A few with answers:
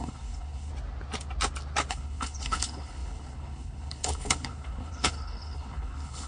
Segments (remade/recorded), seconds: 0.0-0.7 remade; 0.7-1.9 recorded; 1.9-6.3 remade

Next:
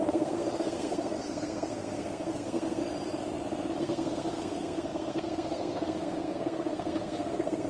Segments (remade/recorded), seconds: 0.0-2.8 remade; 2.8-3.8 recorded; 3.8-7.7 remade

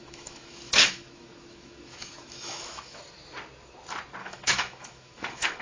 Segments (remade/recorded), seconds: 0.0-3.0 remade; 3.0-4.2 recorded; 4.2-5.6 remade

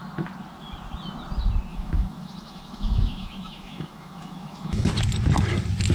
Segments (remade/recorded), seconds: 0.0-1.7 recorded; 1.7-4.9 remade; 4.9-5.9 recorded